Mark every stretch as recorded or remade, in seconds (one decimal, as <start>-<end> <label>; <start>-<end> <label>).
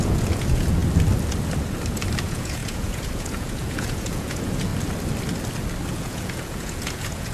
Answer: 0.0-0.8 remade; 0.8-2.2 recorded; 2.2-4.7 remade; 4.7-5.9 recorded; 5.9-7.3 remade